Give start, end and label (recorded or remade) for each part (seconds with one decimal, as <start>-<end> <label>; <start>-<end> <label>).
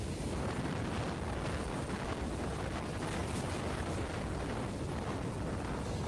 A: 0.0-3.2 recorded; 3.2-4.0 remade; 4.0-6.1 recorded